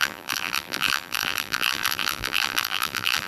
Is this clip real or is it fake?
fake